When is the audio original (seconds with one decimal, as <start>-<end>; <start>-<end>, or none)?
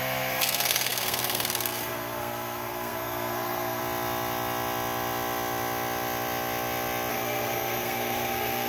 3.8-7.1